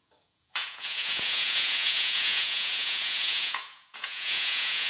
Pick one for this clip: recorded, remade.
remade